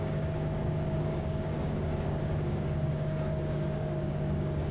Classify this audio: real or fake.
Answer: fake